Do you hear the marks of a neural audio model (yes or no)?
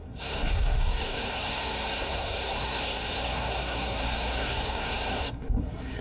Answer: yes